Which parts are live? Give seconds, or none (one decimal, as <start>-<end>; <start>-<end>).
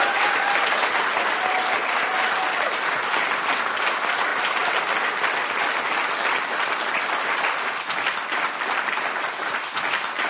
0.0-10.3